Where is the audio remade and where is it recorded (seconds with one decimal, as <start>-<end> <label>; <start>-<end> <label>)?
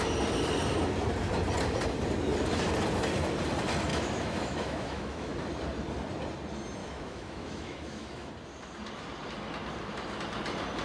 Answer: 0.0-3.9 recorded; 3.9-5.3 remade; 5.3-6.8 recorded; 6.8-8.3 remade; 8.3-10.8 recorded